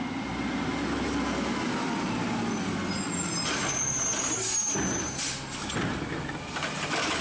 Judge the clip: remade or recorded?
recorded